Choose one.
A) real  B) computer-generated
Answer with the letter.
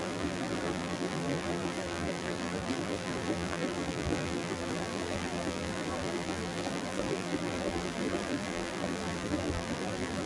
B